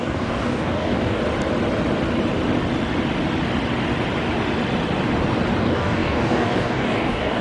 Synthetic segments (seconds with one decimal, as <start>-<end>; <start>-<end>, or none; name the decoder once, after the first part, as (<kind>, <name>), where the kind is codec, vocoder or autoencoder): 0.0-1.2 (codec, DAC); 5.6-7.4